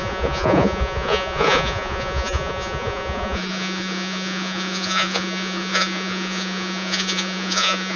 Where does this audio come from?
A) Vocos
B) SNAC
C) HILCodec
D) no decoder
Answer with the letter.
A